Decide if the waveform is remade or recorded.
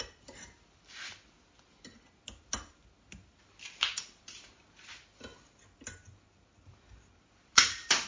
recorded